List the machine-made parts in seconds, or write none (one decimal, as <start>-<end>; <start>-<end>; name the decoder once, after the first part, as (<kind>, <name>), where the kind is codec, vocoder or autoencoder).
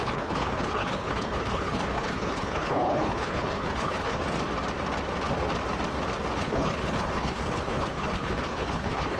0.0-4.2 (codec, HILCodec); 6.4-9.2